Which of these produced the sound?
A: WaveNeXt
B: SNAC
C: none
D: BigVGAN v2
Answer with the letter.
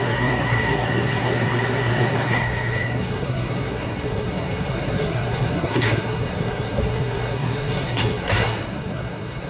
B